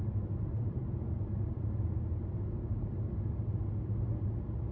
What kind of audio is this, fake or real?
real